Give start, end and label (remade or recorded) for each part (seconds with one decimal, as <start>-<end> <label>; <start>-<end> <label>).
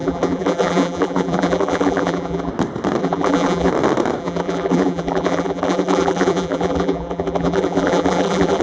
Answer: 0.0-2.5 remade; 2.5-3.0 recorded; 3.0-3.7 remade; 3.7-4.2 recorded; 4.2-8.6 remade